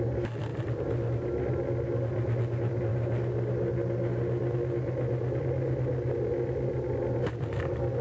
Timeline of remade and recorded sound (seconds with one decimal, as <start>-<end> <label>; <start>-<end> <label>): 0.0-8.0 recorded